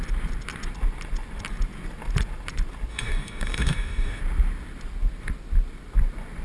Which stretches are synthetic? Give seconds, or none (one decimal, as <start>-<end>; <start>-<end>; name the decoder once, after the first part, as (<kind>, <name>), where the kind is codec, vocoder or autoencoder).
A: 2.9-4.2 (codec, DAC)